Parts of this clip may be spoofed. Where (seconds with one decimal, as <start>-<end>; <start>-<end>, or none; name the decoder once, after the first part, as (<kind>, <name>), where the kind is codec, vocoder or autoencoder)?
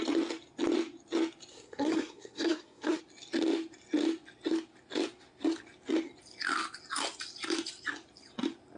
1.5-3.0 (codec, SNAC)